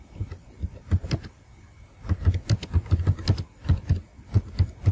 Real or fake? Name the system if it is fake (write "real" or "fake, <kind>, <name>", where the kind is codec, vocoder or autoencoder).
real